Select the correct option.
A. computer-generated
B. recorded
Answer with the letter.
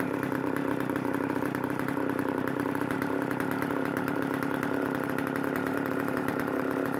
A